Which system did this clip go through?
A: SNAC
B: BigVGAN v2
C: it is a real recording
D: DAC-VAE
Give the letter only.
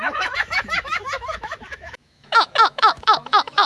D